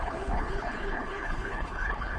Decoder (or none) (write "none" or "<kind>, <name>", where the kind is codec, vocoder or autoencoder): codec, HILCodec